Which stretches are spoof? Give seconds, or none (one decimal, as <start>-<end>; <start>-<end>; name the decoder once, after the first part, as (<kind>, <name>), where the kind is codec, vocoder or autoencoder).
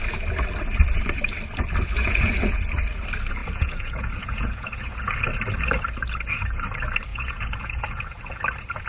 2.0-2.6 (vocoder, Vocos); 3.4-5.0; 7.1-8.3